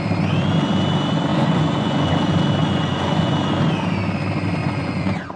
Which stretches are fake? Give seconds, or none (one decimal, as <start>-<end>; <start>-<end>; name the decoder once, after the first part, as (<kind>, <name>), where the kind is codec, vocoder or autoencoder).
1.3-2.1 (vocoder, Vocos); 2.6-3.3; 4.6-5.4

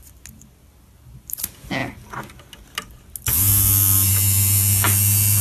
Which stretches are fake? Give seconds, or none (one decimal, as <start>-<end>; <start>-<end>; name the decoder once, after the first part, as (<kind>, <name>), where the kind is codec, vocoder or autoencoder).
none

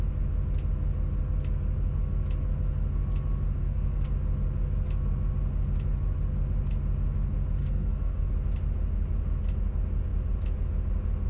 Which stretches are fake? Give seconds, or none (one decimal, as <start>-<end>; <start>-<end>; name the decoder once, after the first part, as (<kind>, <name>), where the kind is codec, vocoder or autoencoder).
3.6-4.1 (codec, SNAC); 7.6-8.3

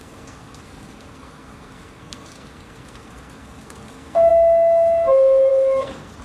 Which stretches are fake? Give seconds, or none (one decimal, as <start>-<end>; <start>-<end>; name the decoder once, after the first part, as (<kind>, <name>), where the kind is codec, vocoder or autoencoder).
0.0-6.2 (codec, SNAC)